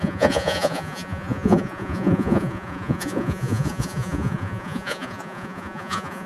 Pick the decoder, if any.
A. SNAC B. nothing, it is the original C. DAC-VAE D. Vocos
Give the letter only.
D